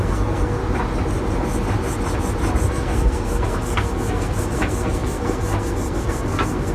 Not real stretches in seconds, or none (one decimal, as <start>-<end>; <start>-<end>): 0.0-0.6; 2.7-6.7